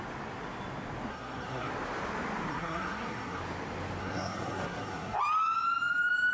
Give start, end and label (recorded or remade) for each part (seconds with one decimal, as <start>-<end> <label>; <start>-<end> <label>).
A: 0.0-1.1 recorded; 1.1-1.7 remade; 1.7-2.5 recorded; 2.5-3.4 remade; 3.4-4.0 recorded; 4.0-5.2 remade; 5.2-6.3 recorded